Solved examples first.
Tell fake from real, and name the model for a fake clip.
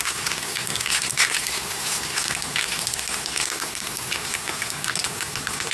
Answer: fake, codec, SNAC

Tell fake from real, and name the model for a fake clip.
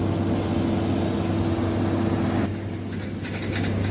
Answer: real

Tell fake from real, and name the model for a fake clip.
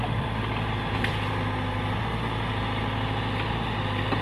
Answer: real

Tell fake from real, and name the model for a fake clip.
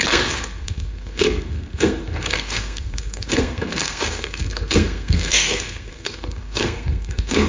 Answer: fake, codec, SNAC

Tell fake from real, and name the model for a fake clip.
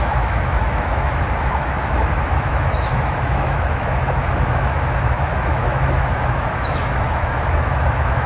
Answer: fake, autoencoder, DAC-VAE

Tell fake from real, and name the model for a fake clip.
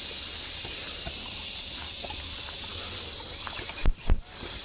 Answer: real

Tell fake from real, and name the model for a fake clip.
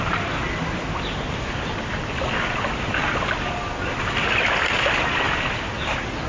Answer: real